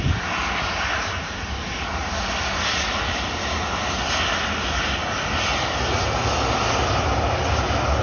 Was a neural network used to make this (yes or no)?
no